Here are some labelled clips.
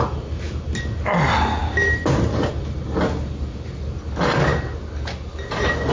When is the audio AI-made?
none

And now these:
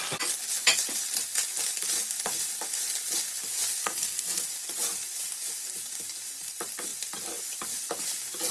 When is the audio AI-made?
3.8-4.4 (codec, SNAC)

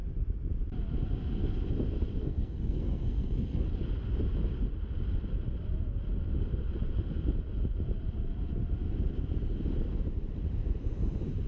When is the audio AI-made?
2.2-3.7 (codec, SNAC)

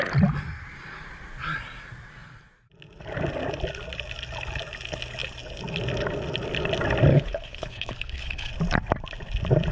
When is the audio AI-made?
7.1-8.5 (codec, HILCodec)